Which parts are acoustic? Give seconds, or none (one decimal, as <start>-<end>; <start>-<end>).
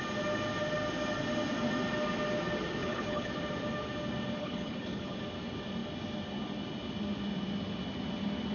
0.0-2.8; 3.3-4.4; 5.2-8.5